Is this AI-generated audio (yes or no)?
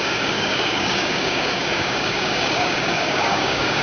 yes